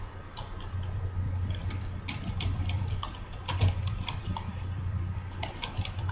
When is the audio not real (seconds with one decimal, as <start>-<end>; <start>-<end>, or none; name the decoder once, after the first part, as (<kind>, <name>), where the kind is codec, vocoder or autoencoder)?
0.0-6.1 (vocoder, BigVGAN v2)